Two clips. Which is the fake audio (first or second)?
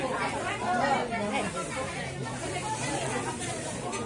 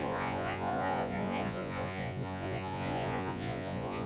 second